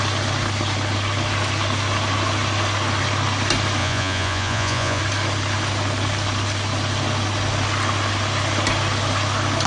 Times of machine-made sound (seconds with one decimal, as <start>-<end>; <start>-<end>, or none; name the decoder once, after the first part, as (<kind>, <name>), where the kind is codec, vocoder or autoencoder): 3.8-5.0 (vocoder, Vocos)